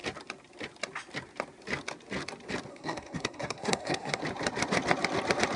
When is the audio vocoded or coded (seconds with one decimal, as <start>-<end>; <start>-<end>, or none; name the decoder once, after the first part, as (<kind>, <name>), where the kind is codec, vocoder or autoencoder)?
2.7-4.2 (codec, SNAC)